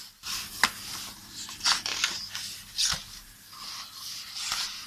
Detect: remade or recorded remade